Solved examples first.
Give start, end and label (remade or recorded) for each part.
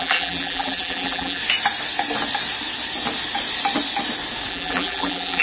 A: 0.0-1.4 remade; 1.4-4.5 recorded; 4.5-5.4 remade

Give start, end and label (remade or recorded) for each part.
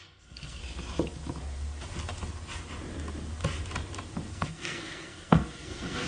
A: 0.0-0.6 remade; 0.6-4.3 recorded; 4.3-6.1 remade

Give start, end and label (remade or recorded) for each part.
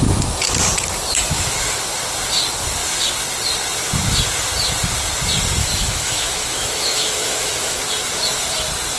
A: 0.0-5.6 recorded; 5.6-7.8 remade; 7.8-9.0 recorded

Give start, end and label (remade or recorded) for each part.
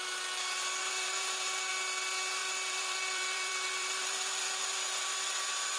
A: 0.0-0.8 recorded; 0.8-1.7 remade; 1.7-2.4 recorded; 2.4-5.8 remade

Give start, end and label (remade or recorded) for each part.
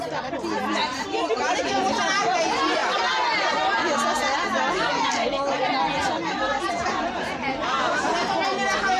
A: 0.0-2.8 remade; 2.8-6.6 recorded; 6.6-8.2 remade; 8.2-9.0 recorded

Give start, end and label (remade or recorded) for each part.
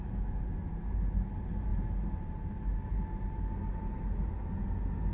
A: 0.0-5.1 recorded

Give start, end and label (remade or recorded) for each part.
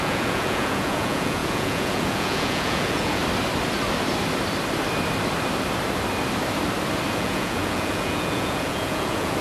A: 0.0-3.2 remade; 3.2-7.1 recorded; 7.1-9.4 remade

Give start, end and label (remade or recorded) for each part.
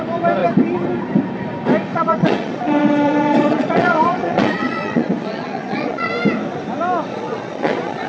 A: 0.0-1.9 recorded; 1.9-6.1 remade; 6.1-7.1 recorded; 7.1-8.1 remade